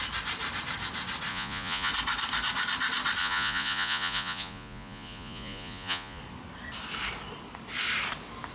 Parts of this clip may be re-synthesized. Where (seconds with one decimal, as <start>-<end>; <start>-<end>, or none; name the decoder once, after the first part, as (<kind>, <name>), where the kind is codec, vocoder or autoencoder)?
1.3-1.9 (vocoder, Vocos); 3.2-6.2